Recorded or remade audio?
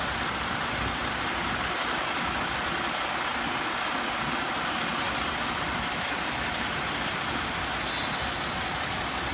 recorded